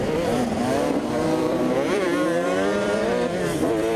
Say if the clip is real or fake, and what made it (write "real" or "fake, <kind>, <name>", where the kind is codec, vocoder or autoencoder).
fake, vocoder, BigVGAN v2